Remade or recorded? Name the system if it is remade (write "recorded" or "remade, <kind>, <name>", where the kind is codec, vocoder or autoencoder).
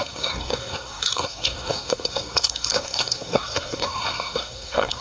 remade, codec, SNAC